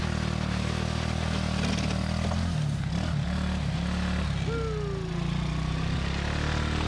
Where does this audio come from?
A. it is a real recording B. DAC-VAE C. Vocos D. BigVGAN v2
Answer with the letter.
A